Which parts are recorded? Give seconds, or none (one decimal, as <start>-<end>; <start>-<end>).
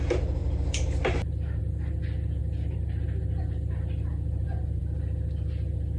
0.0-6.0